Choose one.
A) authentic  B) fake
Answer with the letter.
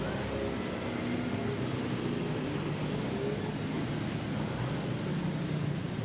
A